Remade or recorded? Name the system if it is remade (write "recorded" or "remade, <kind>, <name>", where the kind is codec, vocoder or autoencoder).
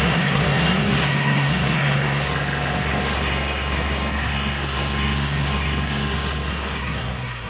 remade, codec, SNAC